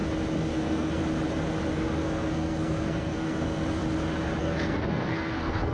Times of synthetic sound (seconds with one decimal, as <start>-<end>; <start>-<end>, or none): 0.5-1.0; 1.7-3.8; 4.4-5.7